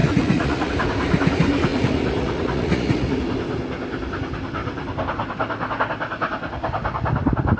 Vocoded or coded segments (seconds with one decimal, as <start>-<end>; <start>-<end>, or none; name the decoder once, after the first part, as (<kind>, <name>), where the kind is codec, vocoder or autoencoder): 0.0-0.7 (vocoder, Vocos); 1.7-3.2